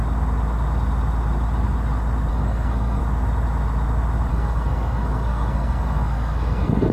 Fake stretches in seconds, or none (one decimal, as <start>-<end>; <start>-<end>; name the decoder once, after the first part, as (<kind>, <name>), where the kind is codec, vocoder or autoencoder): 2.3-3.0 (codec, SNAC); 4.3-6.9